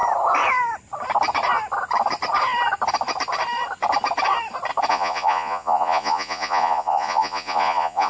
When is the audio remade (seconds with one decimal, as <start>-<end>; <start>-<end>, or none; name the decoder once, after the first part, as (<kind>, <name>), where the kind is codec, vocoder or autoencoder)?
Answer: 4.9-8.1 (vocoder, Vocos)